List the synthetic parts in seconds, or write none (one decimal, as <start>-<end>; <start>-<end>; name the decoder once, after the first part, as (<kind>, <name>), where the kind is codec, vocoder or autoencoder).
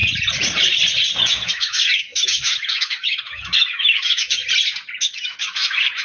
1.3-4.4 (autoencoder, DAC-VAE); 5.0-6.0